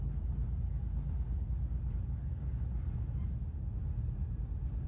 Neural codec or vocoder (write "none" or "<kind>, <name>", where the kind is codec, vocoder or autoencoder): none